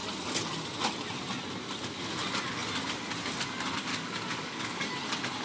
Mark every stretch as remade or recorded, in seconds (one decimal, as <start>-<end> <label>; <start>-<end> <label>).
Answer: 0.0-3.9 recorded; 3.9-4.9 remade; 4.9-5.4 recorded